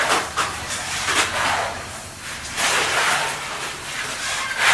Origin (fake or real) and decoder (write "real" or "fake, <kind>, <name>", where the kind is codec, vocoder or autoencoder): fake, vocoder, BigVGAN v2